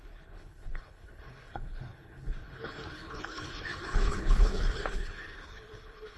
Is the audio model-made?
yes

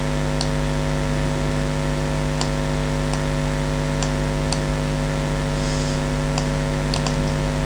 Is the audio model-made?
no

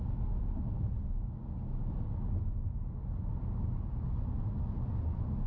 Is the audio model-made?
no